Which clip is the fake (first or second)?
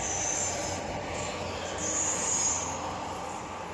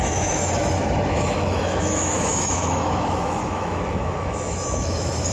second